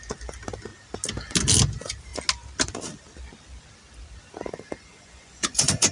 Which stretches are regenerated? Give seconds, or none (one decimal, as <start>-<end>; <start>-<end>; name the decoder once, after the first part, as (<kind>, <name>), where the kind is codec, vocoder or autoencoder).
4.9-5.9 (vocoder, Vocos)